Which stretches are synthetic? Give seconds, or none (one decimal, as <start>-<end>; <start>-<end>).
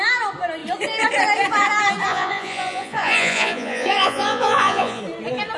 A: 2.1-5.0